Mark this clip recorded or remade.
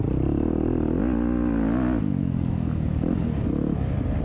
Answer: recorded